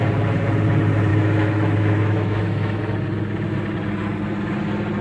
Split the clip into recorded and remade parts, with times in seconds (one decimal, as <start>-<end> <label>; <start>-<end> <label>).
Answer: 0.0-1.1 recorded; 1.1-2.8 remade; 2.8-5.0 recorded